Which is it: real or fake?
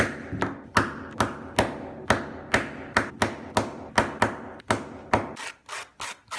real